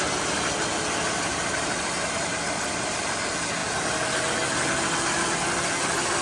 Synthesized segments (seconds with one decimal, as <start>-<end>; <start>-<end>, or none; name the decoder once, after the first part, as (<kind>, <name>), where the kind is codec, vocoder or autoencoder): 1.3-3.2 (vocoder, BigVGAN v2)